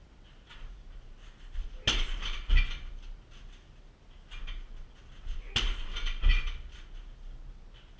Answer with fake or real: real